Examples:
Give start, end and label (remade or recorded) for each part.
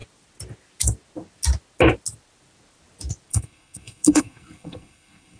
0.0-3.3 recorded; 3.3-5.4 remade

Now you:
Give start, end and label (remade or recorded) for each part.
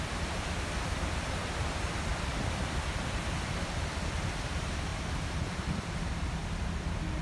0.0-4.9 remade; 4.9-5.4 recorded; 5.4-6.4 remade; 6.4-7.2 recorded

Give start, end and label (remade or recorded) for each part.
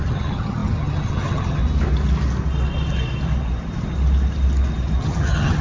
0.0-1.6 remade; 1.6-5.0 recorded; 5.0-5.6 remade